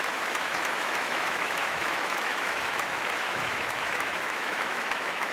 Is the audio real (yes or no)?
no